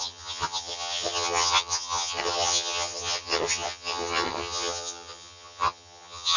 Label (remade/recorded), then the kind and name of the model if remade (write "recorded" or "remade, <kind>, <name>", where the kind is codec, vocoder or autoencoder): remade, vocoder, HiFi-GAN